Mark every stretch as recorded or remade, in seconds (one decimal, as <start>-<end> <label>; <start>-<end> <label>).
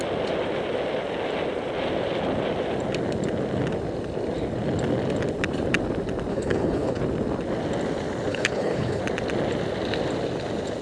0.0-6.3 recorded; 6.3-7.0 remade; 7.0-8.3 recorded; 8.3-9.0 remade; 9.0-10.8 recorded